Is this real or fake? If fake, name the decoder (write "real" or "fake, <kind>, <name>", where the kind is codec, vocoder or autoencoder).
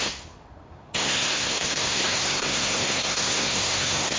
fake, codec, SNAC